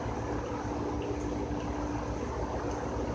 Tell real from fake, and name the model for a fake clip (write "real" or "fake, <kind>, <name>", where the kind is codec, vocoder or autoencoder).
real